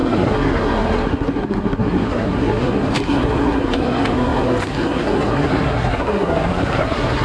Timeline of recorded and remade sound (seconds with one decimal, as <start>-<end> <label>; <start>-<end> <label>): 0.0-7.2 remade